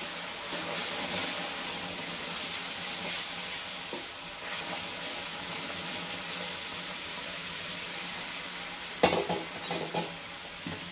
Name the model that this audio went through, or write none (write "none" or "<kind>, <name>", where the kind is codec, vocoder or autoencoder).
none